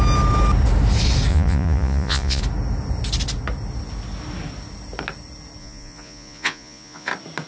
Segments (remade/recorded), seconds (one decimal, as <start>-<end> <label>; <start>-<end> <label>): 0.0-1.3 recorded; 1.3-2.4 remade; 2.4-5.6 recorded; 5.6-7.1 remade; 7.1-7.5 recorded

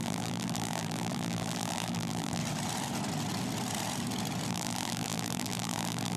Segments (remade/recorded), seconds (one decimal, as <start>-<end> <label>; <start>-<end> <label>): 0.0-2.4 remade; 2.4-4.5 recorded; 4.5-6.2 remade

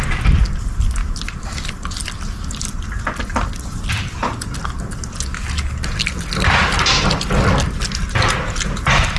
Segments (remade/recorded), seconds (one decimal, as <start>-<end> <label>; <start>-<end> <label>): 0.0-9.2 recorded

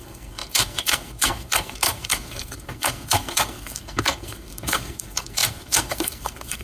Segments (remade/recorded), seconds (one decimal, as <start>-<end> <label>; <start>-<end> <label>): 0.0-6.6 remade

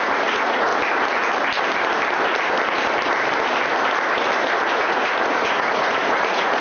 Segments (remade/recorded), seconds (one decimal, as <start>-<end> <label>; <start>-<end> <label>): 0.0-0.7 remade; 0.7-4.7 recorded; 4.7-6.6 remade